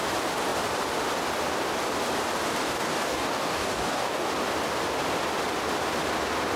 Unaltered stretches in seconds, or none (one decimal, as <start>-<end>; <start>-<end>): 0.0-2.6; 4.3-6.6